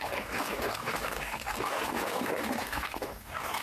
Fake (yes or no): yes